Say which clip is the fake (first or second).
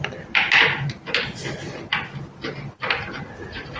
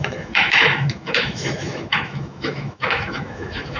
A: second